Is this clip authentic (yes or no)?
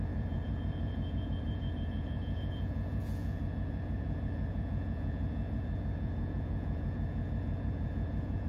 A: no